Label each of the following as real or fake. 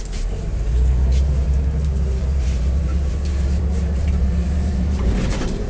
fake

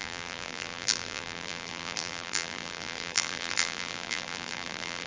fake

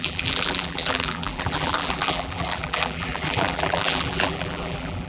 fake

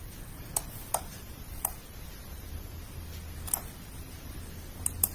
real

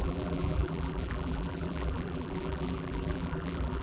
fake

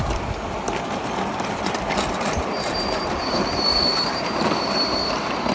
fake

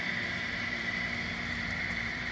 fake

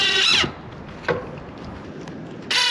real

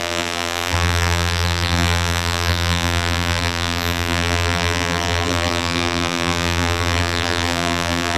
fake